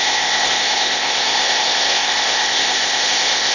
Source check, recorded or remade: remade